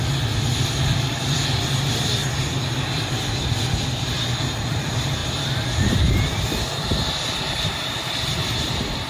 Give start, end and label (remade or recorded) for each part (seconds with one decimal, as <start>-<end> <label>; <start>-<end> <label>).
0.0-2.2 remade; 2.2-2.8 recorded; 2.8-9.1 remade